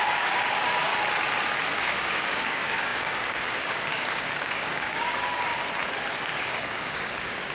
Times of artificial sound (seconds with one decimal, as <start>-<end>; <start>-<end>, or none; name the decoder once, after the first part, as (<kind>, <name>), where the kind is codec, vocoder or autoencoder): 0.0-0.9 (codec, DAC); 1.7-5.5; 6.4-7.5